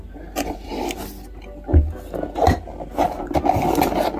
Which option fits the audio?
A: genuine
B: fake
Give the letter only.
A